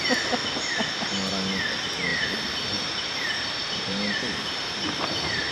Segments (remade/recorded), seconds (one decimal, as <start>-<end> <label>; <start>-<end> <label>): 0.0-2.1 recorded; 2.1-5.5 remade